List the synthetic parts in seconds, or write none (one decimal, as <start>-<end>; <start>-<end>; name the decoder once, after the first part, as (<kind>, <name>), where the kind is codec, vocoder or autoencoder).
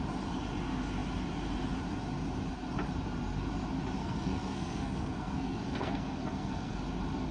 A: 4.0-6.8 (codec, SNAC)